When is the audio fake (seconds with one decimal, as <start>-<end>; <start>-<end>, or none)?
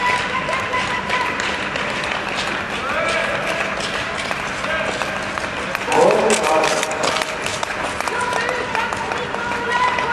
7.5-8.0